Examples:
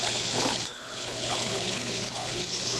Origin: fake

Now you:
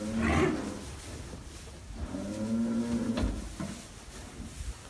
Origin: real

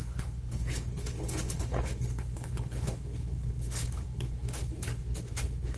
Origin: fake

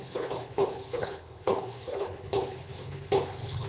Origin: fake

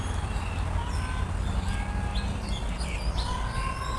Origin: real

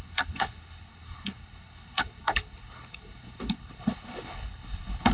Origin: fake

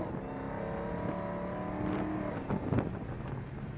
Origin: real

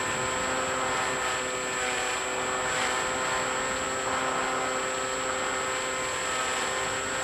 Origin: real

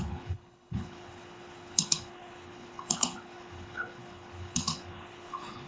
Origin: fake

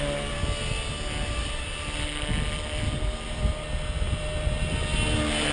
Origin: real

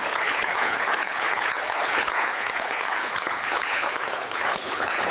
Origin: fake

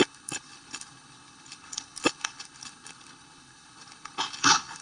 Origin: fake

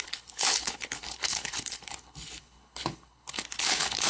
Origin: fake